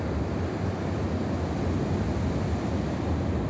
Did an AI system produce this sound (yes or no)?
no